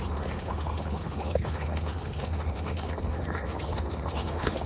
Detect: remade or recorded remade